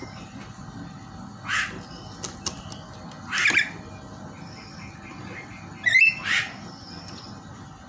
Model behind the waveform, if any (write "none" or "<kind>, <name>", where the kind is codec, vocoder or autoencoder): none